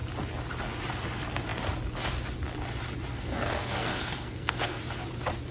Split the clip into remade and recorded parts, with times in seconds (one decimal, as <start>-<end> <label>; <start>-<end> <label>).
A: 0.0-3.1 recorded; 3.1-4.8 remade; 4.8-5.5 recorded

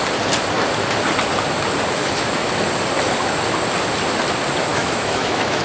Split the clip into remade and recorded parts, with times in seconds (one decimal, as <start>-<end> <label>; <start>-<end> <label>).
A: 0.0-2.0 recorded; 2.0-2.5 remade; 2.5-4.7 recorded; 4.7-5.6 remade

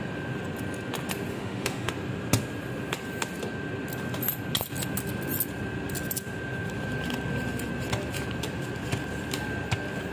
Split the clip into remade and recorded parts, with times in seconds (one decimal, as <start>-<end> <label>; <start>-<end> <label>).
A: 0.0-1.3 recorded; 1.3-1.9 remade; 1.9-10.1 recorded

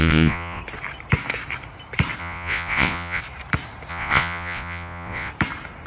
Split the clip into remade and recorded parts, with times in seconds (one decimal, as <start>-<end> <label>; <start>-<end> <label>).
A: 0.0-0.6 remade; 0.6-2.2 recorded; 2.2-3.2 remade; 3.2-3.9 recorded; 3.9-5.3 remade; 5.3-5.9 recorded

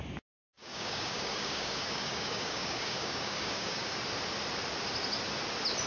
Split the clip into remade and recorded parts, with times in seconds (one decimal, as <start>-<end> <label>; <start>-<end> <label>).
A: 0.0-0.6 recorded; 0.6-3.9 remade; 3.9-5.9 recorded

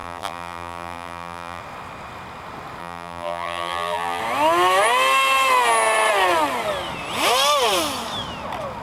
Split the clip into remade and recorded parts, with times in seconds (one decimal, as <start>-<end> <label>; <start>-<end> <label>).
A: 0.0-1.6 remade; 1.6-2.8 recorded; 2.8-4.2 remade; 4.2-8.8 recorded

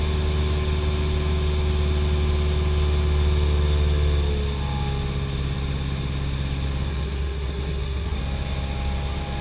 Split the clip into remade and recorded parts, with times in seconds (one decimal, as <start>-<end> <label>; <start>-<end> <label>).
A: 0.0-6.9 recorded; 6.9-8.2 remade; 8.2-9.4 recorded